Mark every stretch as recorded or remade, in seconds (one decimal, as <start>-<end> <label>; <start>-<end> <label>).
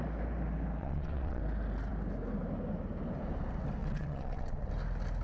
0.0-0.8 recorded; 0.8-1.4 remade; 1.4-3.8 recorded; 3.8-4.7 remade; 4.7-5.2 recorded